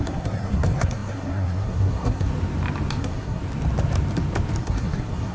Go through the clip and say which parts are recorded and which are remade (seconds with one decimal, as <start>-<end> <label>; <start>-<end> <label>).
0.0-2.3 remade; 2.3-3.0 recorded; 3.0-3.4 remade; 3.4-4.6 recorded; 4.6-5.3 remade